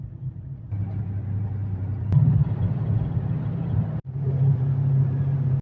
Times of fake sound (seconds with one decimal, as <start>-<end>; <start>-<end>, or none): 0.0-5.6